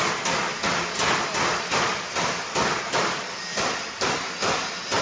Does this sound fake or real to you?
real